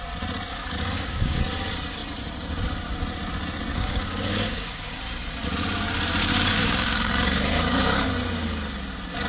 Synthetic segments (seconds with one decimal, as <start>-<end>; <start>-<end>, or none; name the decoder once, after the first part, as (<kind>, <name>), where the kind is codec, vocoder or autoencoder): 0.5-1.4 (codec, DAC); 3.7-5.0; 6.2-8.1